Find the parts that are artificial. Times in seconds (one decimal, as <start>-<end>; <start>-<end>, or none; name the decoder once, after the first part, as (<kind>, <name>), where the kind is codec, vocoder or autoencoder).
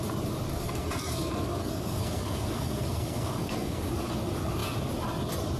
0.5-3.9 (codec, SNAC)